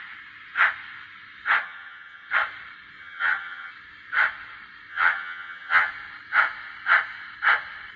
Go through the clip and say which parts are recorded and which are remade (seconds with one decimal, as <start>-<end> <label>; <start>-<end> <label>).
0.0-1.6 recorded; 1.6-2.3 remade; 2.3-3.0 recorded; 3.0-3.7 remade; 3.7-4.9 recorded; 4.9-5.9 remade; 5.9-8.0 recorded